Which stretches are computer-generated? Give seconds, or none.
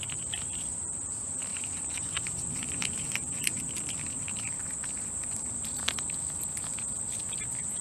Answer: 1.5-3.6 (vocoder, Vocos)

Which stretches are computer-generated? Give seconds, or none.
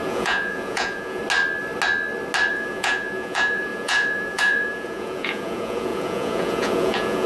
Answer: 0.0-1.2 (vocoder, Vocos); 2.5-7.3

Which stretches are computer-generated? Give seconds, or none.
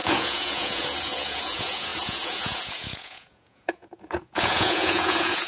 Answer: 0.0-5.5 (vocoder, Vocos)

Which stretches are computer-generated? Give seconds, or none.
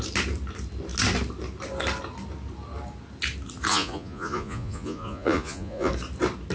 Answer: 3.7-5.9 (vocoder, Vocos)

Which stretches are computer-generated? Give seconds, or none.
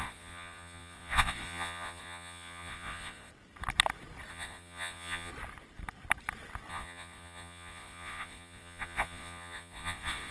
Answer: 0.0-3.3 (vocoder, Vocos); 4.3-5.3; 6.7-10.3